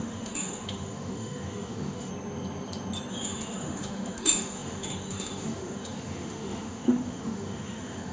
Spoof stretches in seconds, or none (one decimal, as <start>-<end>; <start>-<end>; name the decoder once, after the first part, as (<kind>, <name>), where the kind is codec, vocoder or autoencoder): 0.0-2.1 (autoencoder, DAC-VAE); 3.1-8.1